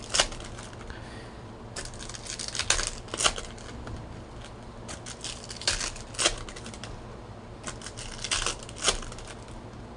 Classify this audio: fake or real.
real